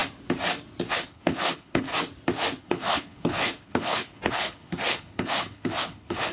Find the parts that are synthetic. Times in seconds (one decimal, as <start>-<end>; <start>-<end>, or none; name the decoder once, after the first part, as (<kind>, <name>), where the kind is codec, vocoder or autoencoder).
0.9-1.9 (codec, HILCodec); 2.6-6.3